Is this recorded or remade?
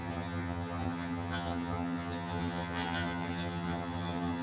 remade